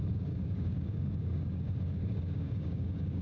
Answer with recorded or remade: remade